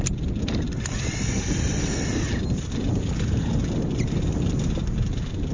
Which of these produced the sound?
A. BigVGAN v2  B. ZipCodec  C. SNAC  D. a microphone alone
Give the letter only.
D